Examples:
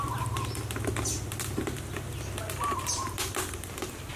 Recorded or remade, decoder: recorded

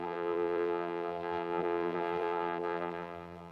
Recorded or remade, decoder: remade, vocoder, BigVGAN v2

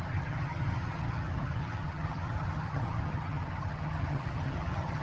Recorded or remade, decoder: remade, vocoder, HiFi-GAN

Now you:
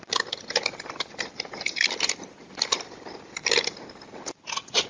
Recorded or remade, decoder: recorded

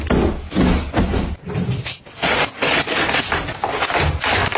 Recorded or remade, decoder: recorded